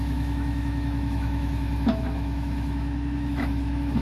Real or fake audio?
fake